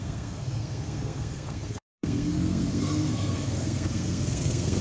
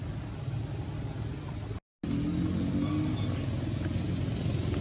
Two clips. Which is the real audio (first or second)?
second